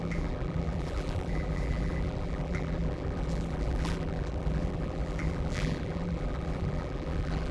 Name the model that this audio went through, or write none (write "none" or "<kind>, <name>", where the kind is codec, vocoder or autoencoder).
vocoder, BigVGAN v2